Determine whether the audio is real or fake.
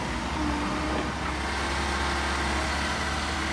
real